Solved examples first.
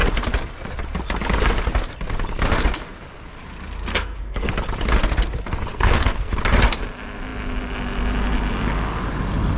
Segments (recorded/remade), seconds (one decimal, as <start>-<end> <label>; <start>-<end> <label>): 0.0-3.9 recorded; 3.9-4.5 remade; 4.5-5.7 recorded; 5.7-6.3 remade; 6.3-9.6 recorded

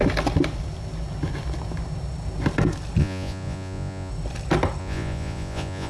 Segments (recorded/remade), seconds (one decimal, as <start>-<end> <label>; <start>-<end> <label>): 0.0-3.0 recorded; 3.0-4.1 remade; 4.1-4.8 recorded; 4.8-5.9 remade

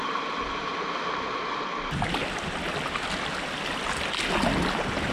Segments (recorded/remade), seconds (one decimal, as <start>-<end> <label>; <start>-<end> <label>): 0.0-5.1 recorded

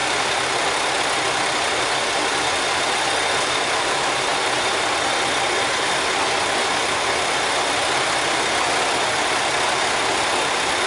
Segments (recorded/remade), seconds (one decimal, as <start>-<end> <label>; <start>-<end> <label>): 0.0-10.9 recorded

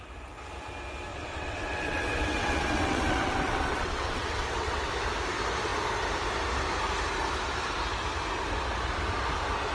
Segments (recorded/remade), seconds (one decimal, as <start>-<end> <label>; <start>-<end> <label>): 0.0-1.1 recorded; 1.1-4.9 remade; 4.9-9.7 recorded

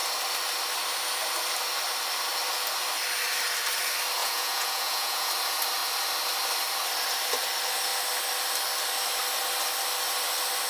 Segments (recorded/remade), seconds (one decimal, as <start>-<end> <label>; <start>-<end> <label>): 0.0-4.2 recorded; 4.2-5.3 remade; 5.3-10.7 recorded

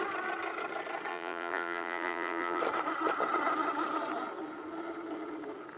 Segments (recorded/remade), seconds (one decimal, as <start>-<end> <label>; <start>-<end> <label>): 0.0-1.1 recorded; 1.1-2.6 remade; 2.6-5.8 recorded

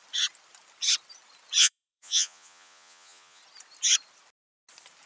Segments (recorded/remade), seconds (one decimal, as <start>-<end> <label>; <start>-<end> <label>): 0.0-1.6 recorded; 1.6-3.4 remade; 3.4-5.1 recorded